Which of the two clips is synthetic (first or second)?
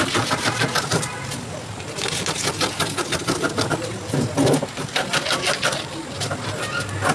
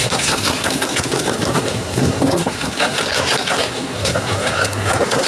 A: second